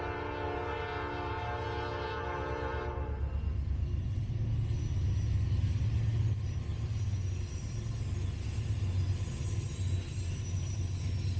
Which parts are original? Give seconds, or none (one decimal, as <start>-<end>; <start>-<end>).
0.0-11.4